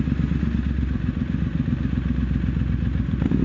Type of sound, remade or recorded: recorded